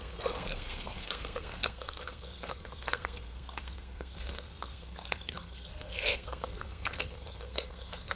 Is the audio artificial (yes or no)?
yes